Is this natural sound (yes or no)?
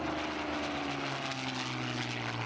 yes